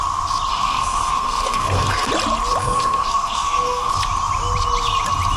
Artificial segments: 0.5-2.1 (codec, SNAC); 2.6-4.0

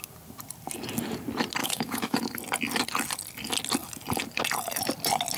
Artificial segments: 1.6-2.2 (autoencoder, DAC-VAE)

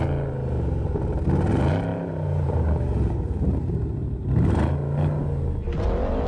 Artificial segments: 1.9-4.7 (vocoder, BigVGAN v2)

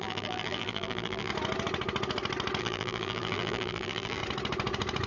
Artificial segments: 0.0-1.3 (vocoder, BigVGAN v2); 2.6-4.2

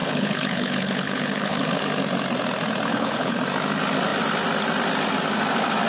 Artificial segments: 0.0-1.8 (codec, HILCodec); 2.9-3.4